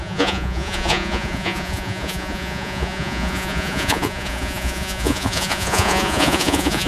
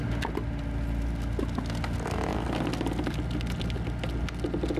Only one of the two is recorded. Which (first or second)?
second